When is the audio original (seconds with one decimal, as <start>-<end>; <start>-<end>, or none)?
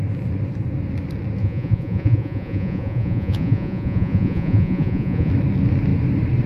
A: 0.0-1.4; 5.3-6.5